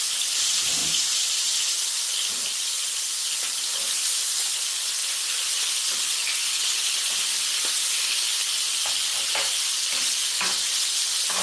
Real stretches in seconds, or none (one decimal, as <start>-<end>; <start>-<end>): 0.0-6.4; 6.9-11.4